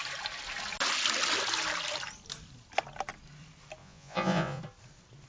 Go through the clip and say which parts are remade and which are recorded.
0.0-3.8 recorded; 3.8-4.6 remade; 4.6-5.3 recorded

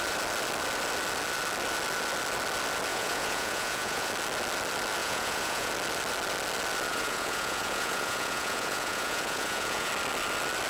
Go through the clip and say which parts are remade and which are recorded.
0.0-2.9 recorded; 2.9-4.1 remade; 4.1-5.0 recorded; 5.0-5.7 remade; 5.7-6.9 recorded; 6.9-9.9 remade; 9.9-10.7 recorded

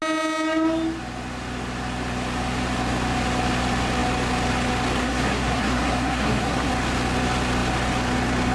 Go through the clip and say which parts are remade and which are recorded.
0.0-5.0 recorded; 5.0-6.7 remade; 6.7-8.5 recorded

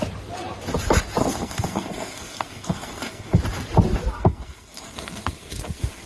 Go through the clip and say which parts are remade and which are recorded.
0.0-1.2 recorded; 1.2-3.4 remade; 3.4-4.1 recorded; 4.1-6.1 remade

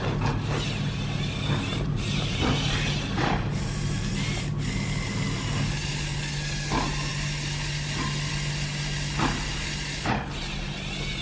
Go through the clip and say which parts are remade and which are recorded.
0.0-11.2 recorded